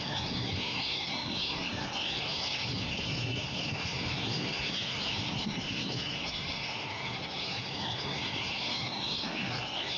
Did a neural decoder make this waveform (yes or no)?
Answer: yes